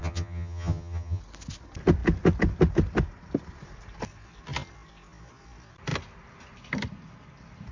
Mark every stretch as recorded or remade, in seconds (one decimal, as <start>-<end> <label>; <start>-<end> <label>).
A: 0.0-1.2 remade; 1.2-7.7 recorded